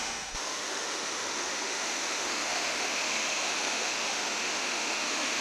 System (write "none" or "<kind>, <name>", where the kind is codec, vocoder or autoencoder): autoencoder, DAC-VAE